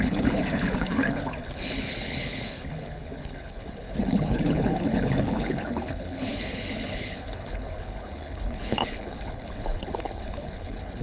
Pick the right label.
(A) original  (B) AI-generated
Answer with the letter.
B